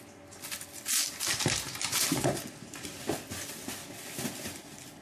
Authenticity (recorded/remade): recorded